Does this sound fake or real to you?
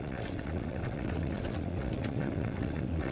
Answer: fake